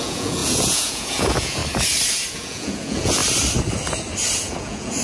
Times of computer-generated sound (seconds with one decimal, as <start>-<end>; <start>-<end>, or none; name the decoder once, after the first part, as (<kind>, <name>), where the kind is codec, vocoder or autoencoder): 0.0-1.6 (vocoder, Vocos); 2.3-3.2; 4.4-5.0